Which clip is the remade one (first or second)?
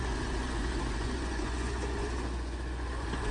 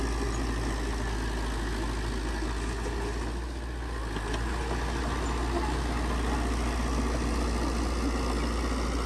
first